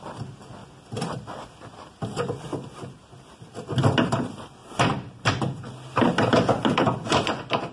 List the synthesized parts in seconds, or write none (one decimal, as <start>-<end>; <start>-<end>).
4.6-5.3